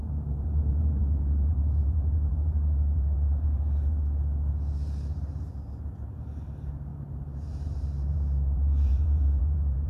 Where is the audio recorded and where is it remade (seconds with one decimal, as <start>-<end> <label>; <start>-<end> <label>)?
0.0-4.0 remade; 4.0-5.8 recorded; 5.8-9.9 remade